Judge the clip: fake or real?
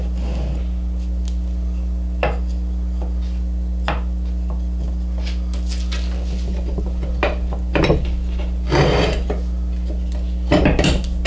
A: real